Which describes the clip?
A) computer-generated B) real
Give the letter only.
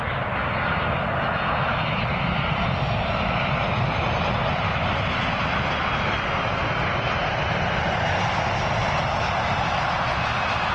B